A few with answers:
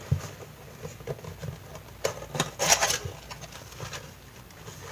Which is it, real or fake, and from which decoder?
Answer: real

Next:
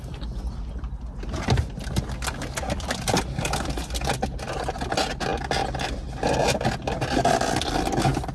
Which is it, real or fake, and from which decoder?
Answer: real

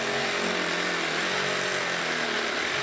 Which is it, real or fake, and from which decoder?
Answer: real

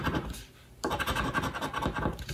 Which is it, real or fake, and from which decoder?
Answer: real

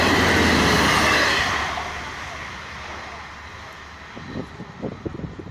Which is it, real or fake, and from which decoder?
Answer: real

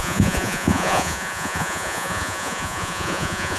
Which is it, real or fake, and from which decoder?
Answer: fake, vocoder, Vocos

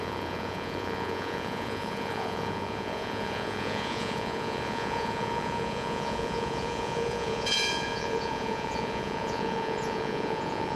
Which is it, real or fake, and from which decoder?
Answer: fake, vocoder, Vocos